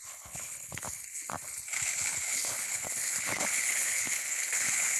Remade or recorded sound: remade